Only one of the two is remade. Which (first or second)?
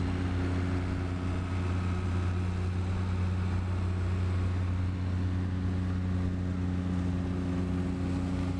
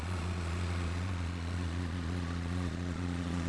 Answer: second